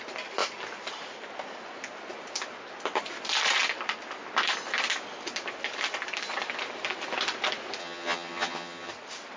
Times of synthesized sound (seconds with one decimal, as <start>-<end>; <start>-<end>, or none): 7.8-8.9